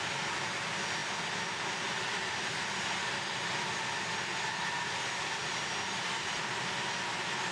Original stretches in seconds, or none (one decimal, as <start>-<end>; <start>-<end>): 0.0-7.5